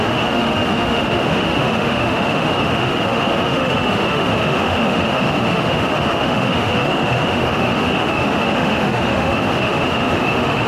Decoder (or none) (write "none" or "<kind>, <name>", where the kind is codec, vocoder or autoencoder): autoencoder, DAC-VAE